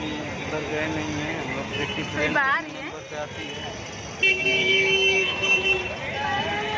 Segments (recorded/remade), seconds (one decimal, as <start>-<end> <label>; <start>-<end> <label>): 0.0-4.3 recorded; 4.3-5.8 remade; 5.8-6.8 recorded